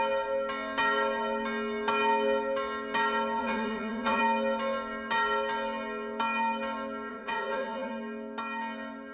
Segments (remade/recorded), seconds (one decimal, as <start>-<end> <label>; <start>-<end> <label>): 0.0-3.4 recorded; 3.4-4.2 remade; 4.2-7.1 recorded; 7.1-7.9 remade; 7.9-9.1 recorded